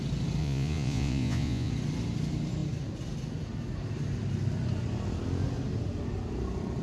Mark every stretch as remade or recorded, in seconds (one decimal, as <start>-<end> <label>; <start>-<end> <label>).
0.0-0.4 recorded; 0.4-1.7 remade; 1.7-6.8 recorded